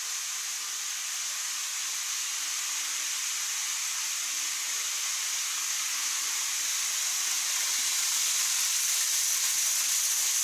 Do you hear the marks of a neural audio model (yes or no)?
no